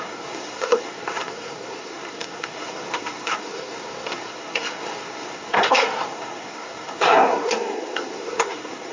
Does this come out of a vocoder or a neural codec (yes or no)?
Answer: yes